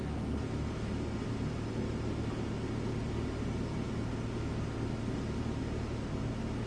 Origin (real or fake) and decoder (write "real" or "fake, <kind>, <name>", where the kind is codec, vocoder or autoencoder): real